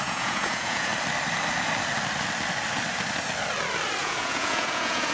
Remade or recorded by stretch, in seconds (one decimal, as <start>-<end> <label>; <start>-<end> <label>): 0.0-0.9 remade; 0.9-4.0 recorded; 4.0-5.1 remade